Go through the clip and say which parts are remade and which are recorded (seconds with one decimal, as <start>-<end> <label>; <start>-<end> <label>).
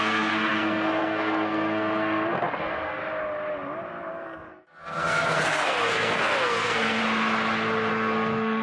0.0-3.0 remade; 3.0-4.1 recorded; 4.1-7.0 remade; 7.0-7.9 recorded; 7.9-8.6 remade